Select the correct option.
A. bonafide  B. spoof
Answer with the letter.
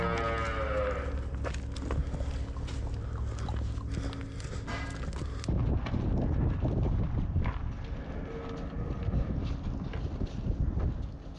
A